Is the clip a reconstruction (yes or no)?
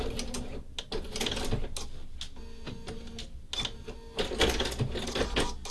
no